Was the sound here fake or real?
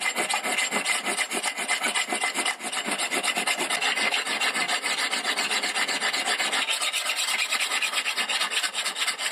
fake